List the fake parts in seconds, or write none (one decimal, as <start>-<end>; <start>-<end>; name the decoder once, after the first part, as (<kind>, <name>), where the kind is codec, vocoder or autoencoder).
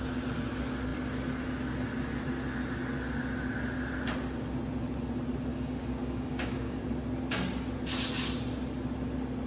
5.5-6.8 (codec, DAC)